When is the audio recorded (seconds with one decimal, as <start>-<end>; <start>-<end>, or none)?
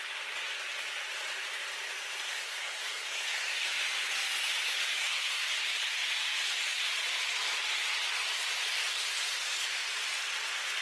0.0-2.3; 3.7-5.0; 5.5-10.8